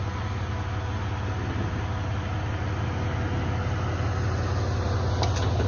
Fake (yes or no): no